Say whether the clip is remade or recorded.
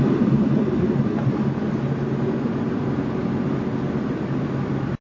recorded